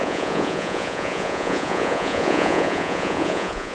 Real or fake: fake